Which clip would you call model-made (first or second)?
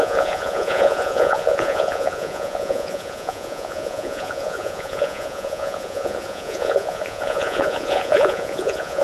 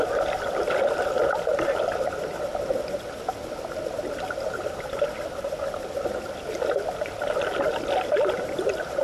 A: first